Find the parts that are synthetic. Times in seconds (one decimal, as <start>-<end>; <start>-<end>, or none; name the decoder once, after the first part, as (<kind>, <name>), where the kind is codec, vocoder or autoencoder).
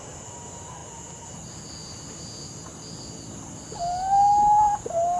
none